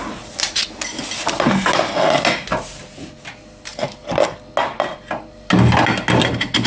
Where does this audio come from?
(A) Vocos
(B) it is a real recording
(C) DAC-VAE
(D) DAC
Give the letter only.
B